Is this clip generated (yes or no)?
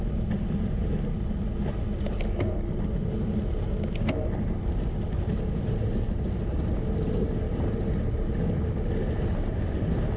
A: no